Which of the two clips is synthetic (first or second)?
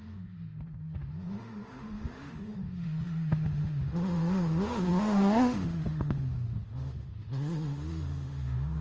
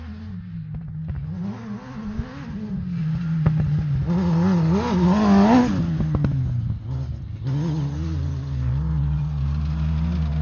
first